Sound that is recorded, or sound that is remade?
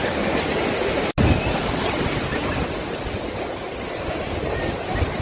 recorded